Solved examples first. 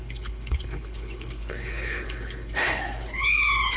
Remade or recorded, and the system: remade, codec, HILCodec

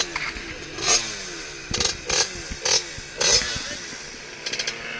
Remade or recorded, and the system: recorded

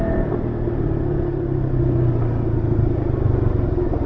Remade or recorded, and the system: recorded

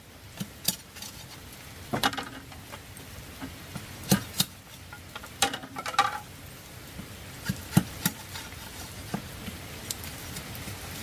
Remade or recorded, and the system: recorded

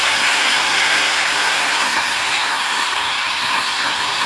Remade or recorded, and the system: remade, codec, SNAC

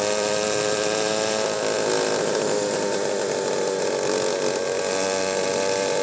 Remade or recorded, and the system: remade, vocoder, BigVGAN v2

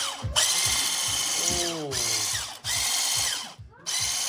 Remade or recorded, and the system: recorded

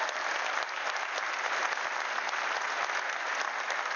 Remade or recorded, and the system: recorded